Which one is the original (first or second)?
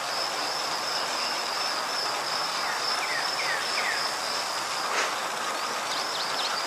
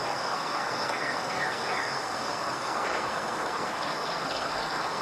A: first